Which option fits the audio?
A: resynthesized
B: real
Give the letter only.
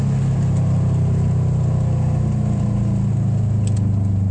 B